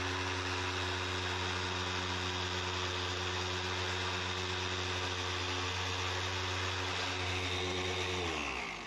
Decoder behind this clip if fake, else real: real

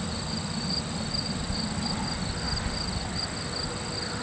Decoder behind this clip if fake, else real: real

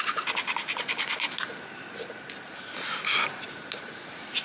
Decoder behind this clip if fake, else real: real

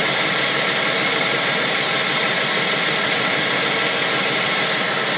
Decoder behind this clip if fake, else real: real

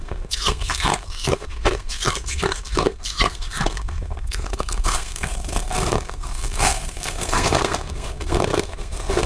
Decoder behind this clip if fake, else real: fake, codec, SNAC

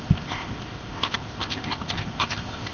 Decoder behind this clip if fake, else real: fake, codec, ZipCodec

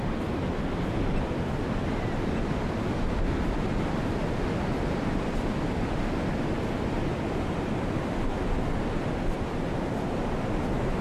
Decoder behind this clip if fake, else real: real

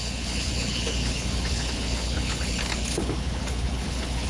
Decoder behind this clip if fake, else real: fake, codec, HILCodec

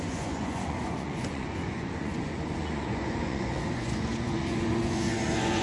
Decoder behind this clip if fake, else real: fake, vocoder, Vocos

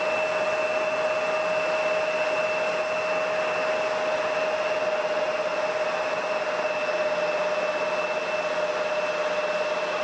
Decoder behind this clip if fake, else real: real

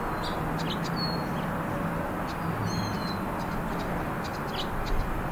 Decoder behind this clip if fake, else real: real